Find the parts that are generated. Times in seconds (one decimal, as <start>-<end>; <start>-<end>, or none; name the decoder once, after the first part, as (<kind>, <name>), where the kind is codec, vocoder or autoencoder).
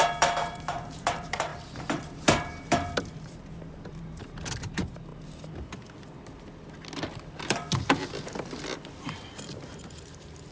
0.0-5.1 (vocoder, BigVGAN v2); 9.7-10.5